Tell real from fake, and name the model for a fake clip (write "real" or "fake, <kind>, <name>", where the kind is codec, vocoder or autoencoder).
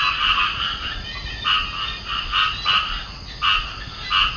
real